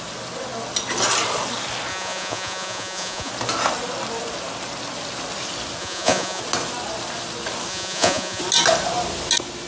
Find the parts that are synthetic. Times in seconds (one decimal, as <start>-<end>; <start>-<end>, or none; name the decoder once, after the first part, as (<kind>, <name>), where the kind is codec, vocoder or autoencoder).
1.9-3.3 (vocoder, Vocos); 5.8-6.4; 7.7-8.4